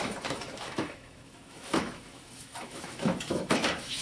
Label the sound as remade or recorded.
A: remade